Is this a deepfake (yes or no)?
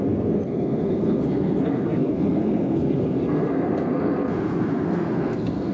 yes